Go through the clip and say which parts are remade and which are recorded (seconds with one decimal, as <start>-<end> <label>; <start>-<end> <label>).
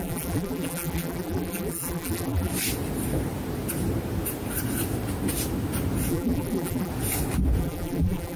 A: 0.0-2.5 remade; 2.5-6.1 recorded; 6.1-6.9 remade; 6.9-7.6 recorded; 7.6-8.4 remade